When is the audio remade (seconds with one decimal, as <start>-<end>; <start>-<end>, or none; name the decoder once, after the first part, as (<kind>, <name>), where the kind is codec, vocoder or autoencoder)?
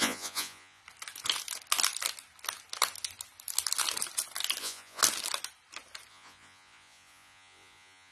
0.0-0.8 (vocoder, Vocos); 4.6-5.0; 6.1-8.1